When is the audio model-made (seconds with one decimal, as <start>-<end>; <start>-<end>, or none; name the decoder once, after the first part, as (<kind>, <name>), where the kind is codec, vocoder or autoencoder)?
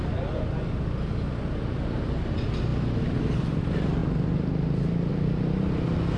none